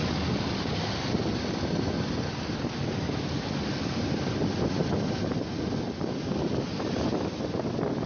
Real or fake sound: real